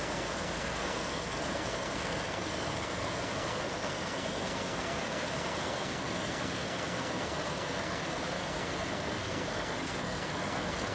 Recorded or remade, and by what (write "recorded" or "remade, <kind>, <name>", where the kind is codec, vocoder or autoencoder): remade, codec, SNAC